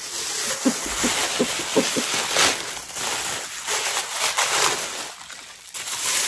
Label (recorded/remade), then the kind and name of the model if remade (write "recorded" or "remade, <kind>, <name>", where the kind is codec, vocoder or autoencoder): recorded